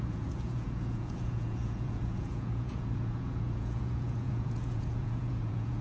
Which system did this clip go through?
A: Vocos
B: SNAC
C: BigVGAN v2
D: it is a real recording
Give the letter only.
A